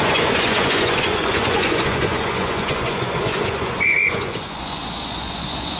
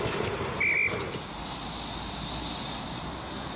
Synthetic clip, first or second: first